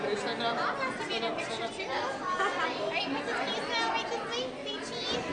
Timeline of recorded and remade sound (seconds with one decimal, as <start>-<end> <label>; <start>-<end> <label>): 0.0-5.3 recorded